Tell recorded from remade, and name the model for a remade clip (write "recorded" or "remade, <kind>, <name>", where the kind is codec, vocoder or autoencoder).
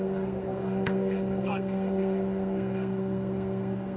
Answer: remade, codec, SNAC